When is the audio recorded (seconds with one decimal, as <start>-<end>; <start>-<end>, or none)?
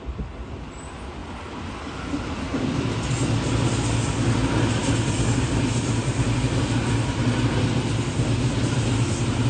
0.0-9.5